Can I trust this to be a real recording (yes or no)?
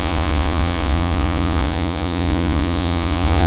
no